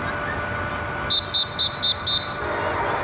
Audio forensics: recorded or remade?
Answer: recorded